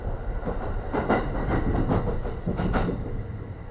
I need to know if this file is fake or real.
real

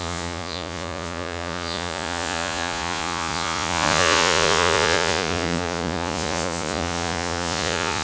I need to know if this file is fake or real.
fake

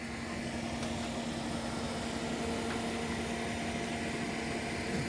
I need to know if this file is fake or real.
real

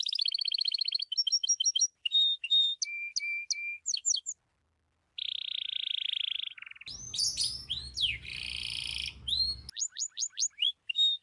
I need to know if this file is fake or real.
real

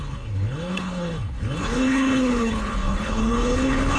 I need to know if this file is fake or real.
fake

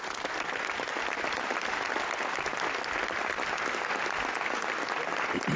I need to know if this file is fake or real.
real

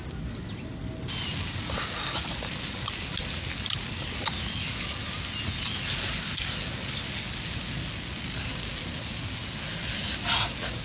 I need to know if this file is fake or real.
real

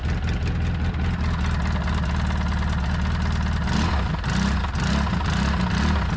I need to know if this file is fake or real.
real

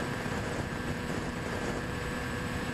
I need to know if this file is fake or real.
fake